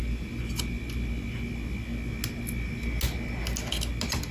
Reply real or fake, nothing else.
real